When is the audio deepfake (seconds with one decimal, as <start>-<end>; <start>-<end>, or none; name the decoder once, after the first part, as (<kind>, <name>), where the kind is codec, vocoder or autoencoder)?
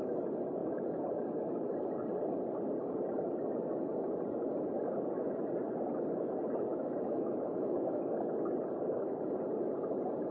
6.7-8.3 (autoencoder, DAC-VAE)